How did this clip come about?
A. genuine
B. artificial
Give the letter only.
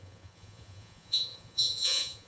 B